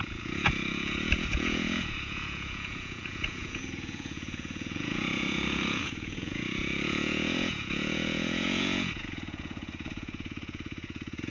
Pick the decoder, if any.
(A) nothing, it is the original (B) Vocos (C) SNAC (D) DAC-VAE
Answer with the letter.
B